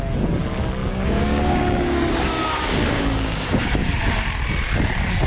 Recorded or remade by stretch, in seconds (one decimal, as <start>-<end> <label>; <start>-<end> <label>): 0.0-0.8 recorded; 0.8-4.0 remade; 4.0-5.3 recorded